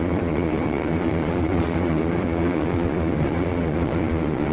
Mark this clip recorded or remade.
remade